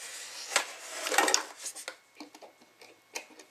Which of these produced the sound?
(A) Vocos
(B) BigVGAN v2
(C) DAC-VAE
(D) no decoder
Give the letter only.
D